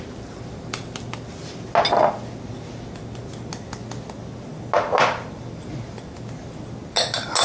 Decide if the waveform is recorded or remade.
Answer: recorded